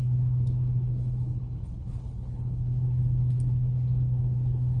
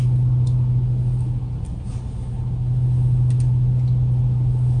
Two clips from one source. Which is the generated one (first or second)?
first